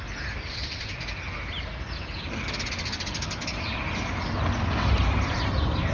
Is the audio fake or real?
real